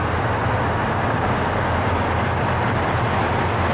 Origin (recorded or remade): recorded